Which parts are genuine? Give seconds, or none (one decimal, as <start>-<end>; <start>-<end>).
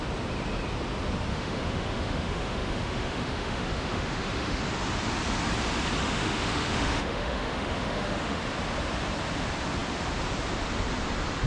0.0-1.3; 4.6-6.0; 8.4-11.5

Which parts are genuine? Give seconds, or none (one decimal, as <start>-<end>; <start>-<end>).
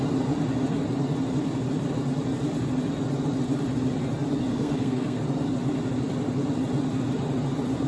0.0-4.5; 5.2-7.9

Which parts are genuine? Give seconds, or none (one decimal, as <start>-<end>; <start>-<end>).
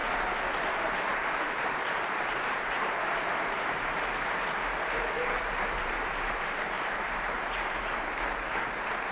3.9-5.2; 8.5-9.1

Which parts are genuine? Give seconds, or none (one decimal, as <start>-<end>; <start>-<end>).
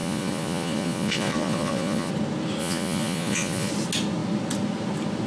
2.1-2.6; 3.7-5.3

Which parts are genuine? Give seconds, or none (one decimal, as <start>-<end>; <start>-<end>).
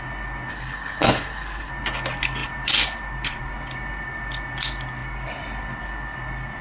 0.0-0.5; 1.7-6.6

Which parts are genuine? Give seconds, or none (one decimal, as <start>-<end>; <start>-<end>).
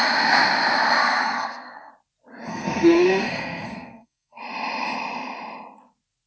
0.0-1.0; 1.9-2.5; 4.4-6.3